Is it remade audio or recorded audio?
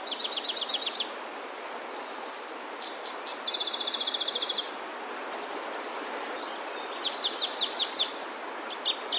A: recorded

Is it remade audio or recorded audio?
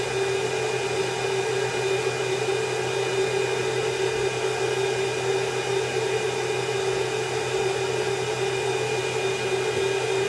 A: recorded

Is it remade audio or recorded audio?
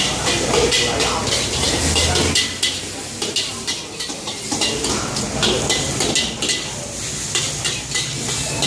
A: recorded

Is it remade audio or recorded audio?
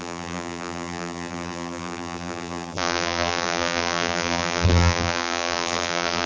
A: remade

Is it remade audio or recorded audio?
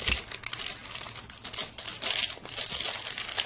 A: recorded